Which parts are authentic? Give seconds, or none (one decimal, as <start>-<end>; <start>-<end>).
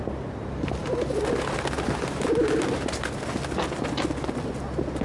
0.0-5.0